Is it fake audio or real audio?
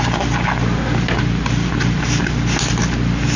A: real